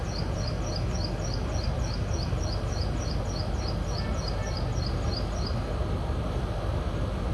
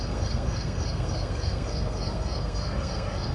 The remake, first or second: second